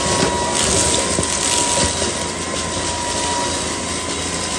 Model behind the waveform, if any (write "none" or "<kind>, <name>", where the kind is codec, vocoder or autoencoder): none